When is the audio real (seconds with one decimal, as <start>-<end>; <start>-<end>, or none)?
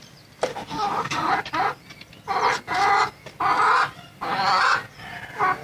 0.0-0.5; 1.3-5.6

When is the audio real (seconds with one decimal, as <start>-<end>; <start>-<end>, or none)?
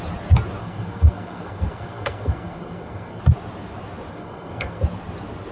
0.0-0.6; 3.2-4.1; 4.8-5.5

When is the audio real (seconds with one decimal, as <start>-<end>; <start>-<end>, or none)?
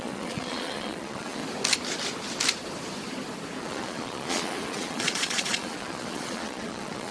1.4-3.6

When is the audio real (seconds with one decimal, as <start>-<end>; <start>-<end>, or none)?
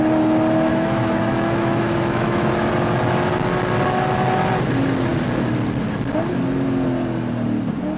0.0-0.7; 2.5-8.0